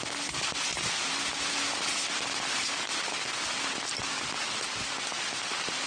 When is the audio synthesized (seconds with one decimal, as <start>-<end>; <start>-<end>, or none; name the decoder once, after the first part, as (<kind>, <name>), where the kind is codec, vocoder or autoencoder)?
none